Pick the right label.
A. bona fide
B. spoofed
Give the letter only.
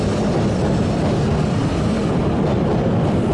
A